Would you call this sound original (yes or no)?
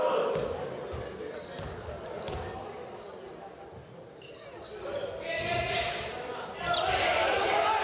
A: yes